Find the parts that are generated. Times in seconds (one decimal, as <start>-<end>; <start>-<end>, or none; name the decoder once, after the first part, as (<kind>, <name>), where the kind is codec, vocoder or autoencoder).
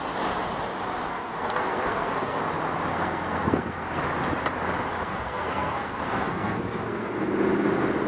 1.1-2.4 (codec, SNAC); 2.9-4.0; 5.0-7.3